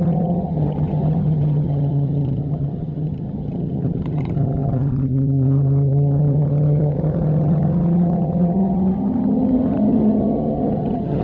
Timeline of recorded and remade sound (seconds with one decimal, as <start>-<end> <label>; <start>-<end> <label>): 0.0-11.2 remade